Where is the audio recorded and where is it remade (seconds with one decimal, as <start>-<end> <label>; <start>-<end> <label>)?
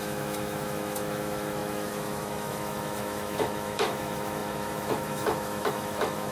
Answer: 0.0-6.3 remade